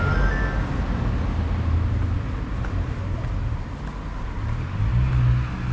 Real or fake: real